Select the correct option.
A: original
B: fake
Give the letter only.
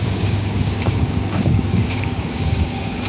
B